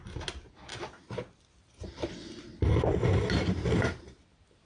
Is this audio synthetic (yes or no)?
no